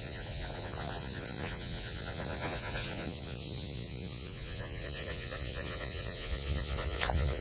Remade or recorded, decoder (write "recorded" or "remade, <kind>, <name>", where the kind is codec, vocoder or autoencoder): remade, vocoder, Vocos